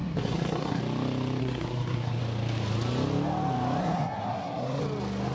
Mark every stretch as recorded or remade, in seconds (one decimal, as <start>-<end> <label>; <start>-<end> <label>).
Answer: 0.0-0.8 remade; 0.8-1.4 recorded; 1.4-2.2 remade; 2.2-3.8 recorded; 3.8-4.8 remade; 4.8-5.3 recorded